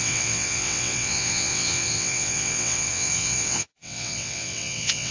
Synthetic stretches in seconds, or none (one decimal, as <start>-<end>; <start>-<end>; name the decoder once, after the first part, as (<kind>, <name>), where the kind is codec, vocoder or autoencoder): 0.0-5.1 (vocoder, WaveNeXt)